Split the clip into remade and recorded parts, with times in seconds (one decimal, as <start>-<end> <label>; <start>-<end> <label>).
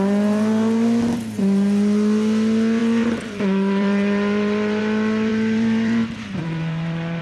0.0-2.8 recorded; 2.8-4.8 remade; 4.8-5.3 recorded; 5.3-7.2 remade